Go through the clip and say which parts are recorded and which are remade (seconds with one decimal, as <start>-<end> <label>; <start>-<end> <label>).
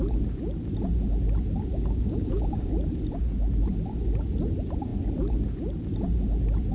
0.0-1.7 recorded; 1.7-2.7 remade; 2.7-6.7 recorded